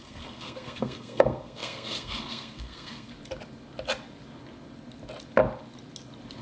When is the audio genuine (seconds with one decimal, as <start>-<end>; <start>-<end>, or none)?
3.1-6.4